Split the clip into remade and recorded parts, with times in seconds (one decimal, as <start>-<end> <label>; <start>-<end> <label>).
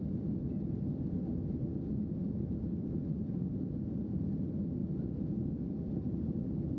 0.0-6.8 recorded